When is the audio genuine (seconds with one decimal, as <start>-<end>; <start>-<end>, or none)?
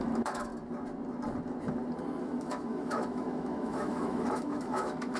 0.5-2.2